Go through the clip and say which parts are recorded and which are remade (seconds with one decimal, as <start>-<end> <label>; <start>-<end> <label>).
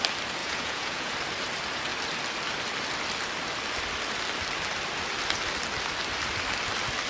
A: 0.0-0.4 recorded; 0.4-1.1 remade; 1.1-7.1 recorded